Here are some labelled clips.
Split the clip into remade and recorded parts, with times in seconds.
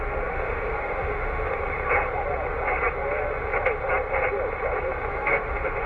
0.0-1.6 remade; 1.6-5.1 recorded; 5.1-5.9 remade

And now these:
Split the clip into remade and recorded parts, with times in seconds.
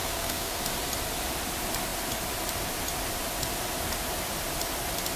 0.0-0.6 remade; 0.6-5.2 recorded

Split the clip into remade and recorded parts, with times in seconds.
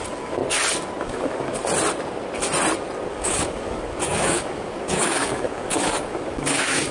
0.0-0.4 remade; 0.4-1.0 recorded; 1.0-1.6 remade; 1.6-3.1 recorded; 3.1-6.9 remade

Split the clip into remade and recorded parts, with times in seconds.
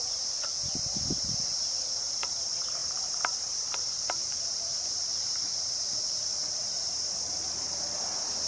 0.0-8.5 remade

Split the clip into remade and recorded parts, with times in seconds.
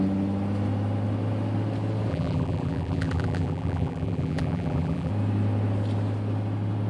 0.0-2.1 recorded; 2.1-5.1 remade; 5.1-6.9 recorded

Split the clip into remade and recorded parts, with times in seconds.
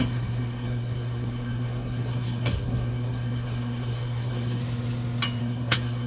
0.0-4.6 remade; 4.6-5.4 recorded; 5.4-6.1 remade